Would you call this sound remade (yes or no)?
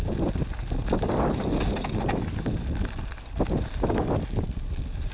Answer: no